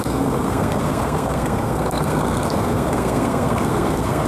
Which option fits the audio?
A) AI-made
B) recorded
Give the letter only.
A